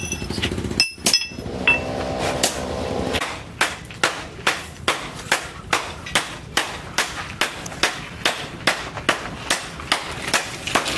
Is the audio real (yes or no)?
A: yes